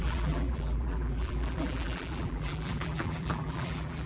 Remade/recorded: remade